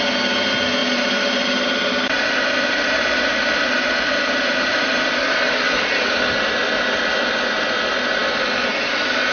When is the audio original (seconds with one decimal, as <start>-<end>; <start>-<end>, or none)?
0.0-0.8; 6.0-9.3